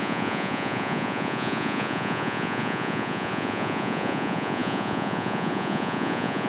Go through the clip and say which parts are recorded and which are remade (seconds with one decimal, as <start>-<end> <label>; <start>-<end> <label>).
0.0-6.5 remade